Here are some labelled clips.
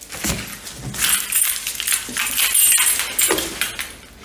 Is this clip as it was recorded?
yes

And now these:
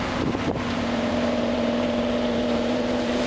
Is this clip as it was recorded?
no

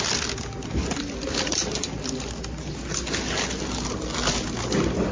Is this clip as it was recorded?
yes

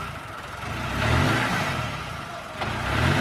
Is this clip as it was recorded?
yes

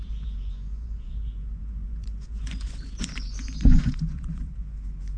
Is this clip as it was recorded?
no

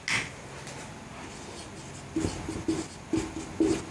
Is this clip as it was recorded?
yes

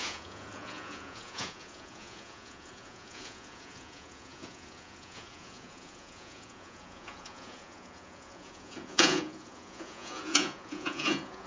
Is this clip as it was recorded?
no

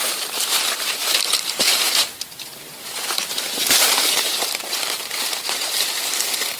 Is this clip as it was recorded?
no